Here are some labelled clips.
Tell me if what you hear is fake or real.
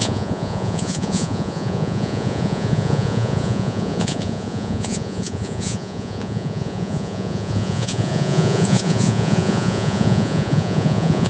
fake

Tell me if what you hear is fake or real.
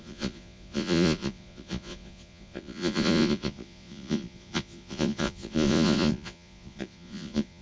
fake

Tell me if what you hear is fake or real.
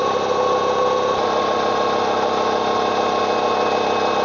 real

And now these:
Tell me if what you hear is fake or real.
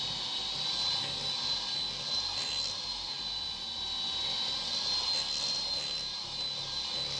real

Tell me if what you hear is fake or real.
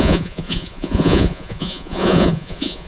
fake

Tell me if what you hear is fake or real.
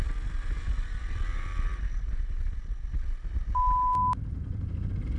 real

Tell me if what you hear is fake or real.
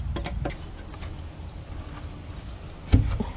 real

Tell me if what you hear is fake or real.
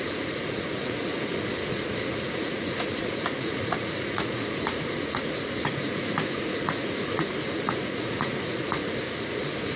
fake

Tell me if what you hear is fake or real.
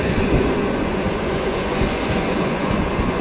fake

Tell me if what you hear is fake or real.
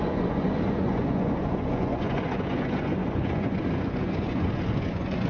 fake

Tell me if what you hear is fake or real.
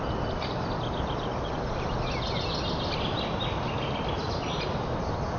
real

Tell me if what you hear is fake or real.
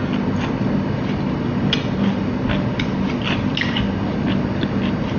real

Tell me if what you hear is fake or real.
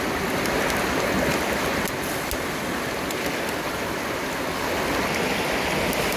real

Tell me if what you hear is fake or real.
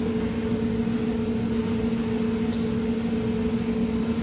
real